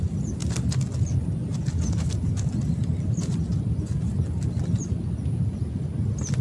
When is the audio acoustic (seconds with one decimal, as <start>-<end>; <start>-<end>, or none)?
0.0-6.4